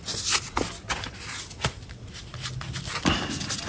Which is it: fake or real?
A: real